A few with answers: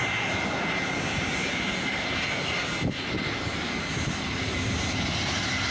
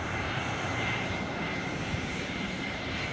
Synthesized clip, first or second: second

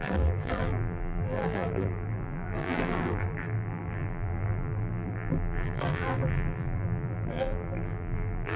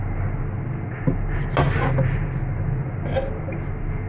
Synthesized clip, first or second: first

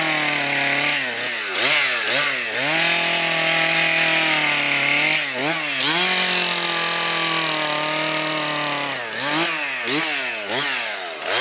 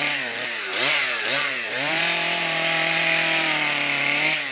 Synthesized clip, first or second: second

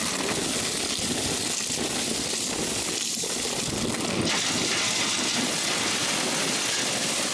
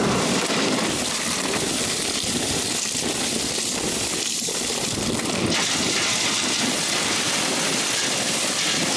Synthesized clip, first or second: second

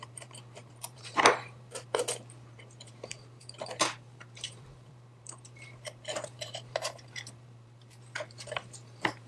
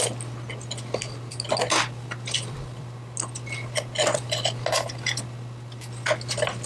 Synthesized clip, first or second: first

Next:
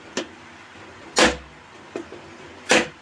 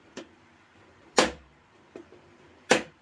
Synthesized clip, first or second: second